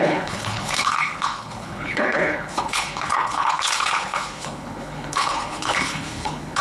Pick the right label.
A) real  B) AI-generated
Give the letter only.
B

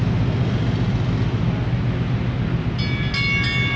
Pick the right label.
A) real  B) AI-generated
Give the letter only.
A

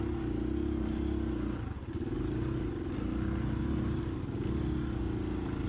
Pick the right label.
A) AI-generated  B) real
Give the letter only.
B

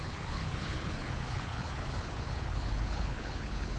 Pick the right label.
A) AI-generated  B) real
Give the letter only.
A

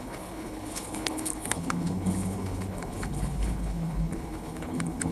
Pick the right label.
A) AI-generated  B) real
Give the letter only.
A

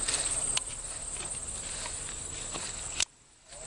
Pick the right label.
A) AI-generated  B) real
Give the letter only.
B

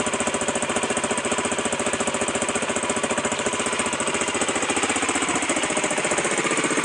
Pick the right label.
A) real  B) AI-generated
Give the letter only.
A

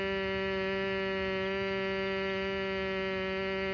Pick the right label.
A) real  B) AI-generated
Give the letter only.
A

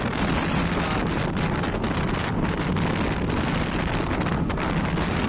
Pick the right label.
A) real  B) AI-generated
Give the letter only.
A